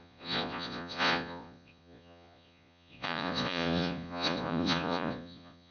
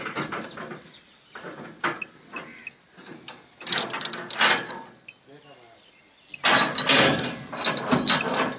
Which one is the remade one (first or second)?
first